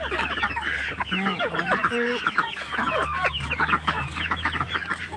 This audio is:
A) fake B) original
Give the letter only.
A